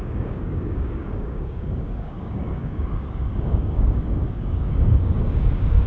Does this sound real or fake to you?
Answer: fake